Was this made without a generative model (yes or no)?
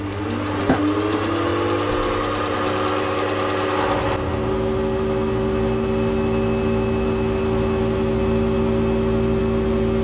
yes